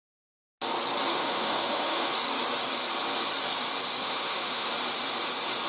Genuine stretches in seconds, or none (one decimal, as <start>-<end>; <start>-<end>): 0.0-1.1; 2.1-4.0; 4.7-5.7